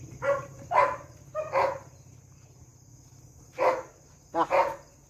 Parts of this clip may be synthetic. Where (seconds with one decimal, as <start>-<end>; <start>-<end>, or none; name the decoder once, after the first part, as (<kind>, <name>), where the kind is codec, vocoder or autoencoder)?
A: 0.0-2.7 (vocoder, BigVGAN v2)